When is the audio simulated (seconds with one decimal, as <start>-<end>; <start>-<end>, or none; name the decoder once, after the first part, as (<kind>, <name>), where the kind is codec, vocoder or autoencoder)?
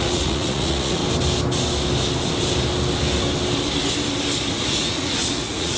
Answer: 0.0-1.0 (vocoder, Vocos); 4.5-5.8